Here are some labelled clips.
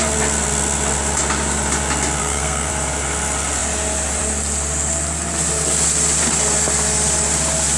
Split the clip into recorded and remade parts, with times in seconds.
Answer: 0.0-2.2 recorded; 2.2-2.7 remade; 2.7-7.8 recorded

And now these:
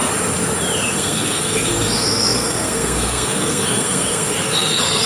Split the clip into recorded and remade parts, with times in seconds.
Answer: 0.0-0.9 recorded; 0.9-5.1 remade

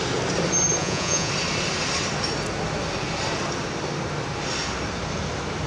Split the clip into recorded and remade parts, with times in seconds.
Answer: 0.0-0.8 recorded; 0.8-1.3 remade; 1.3-5.7 recorded

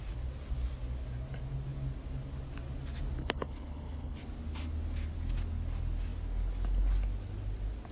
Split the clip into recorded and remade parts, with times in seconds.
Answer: 0.0-3.2 recorded; 3.2-4.2 remade; 4.2-7.9 recorded

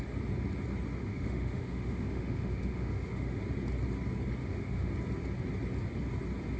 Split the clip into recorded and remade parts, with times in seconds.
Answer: 0.0-1.0 recorded; 1.0-3.4 remade; 3.4-4.4 recorded; 4.4-4.9 remade; 4.9-6.6 recorded

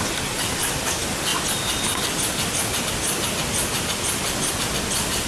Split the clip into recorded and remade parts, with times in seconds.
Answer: 0.0-5.3 recorded

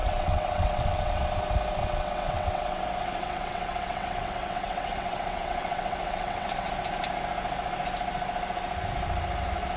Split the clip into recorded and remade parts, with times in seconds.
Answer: 0.0-1.2 remade; 1.2-1.8 recorded; 1.8-2.8 remade; 2.8-3.2 recorded; 3.2-6.7 remade; 6.7-9.8 recorded